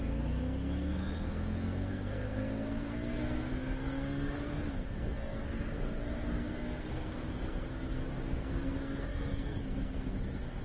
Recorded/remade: remade